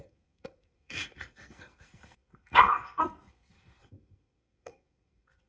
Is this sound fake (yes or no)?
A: yes